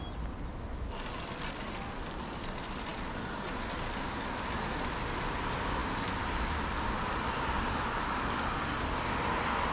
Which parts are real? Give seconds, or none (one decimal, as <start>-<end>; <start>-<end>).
0.0-9.7